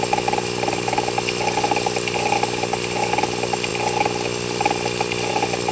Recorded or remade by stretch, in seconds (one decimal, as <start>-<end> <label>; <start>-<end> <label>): 0.0-5.7 recorded